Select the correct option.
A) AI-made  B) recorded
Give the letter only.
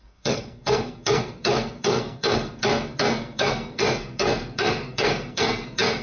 A